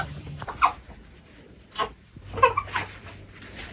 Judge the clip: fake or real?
real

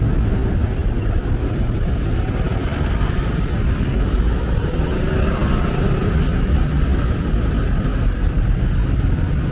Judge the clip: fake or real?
real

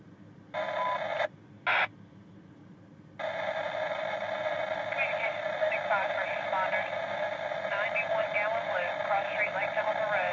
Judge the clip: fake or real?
real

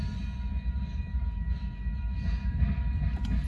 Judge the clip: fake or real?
real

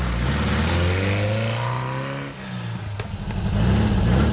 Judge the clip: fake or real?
real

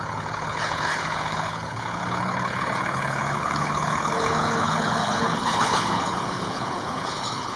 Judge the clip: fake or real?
fake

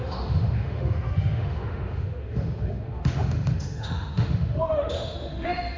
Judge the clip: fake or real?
fake